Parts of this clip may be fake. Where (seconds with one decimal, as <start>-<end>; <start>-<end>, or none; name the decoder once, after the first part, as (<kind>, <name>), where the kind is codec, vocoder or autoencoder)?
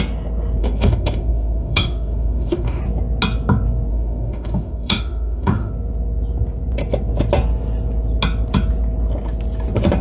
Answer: 0.6-2.8 (autoencoder, DAC-VAE); 3.9-5.7